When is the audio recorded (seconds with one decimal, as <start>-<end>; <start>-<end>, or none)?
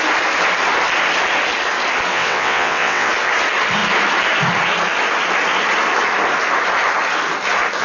0.0-2.1; 3.1-7.8